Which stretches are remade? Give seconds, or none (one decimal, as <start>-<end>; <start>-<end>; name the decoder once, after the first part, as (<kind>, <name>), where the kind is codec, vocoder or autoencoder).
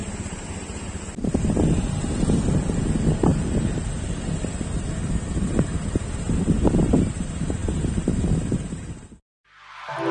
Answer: none